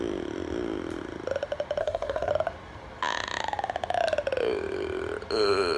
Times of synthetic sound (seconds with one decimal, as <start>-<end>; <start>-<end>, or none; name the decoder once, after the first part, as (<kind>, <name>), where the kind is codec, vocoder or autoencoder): 1.8-2.3 (codec, SNAC)